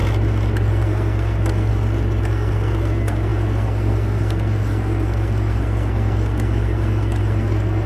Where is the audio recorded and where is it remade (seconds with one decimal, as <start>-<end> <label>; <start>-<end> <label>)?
0.0-0.7 recorded; 0.7-1.7 remade; 1.7-2.2 recorded; 2.2-7.9 remade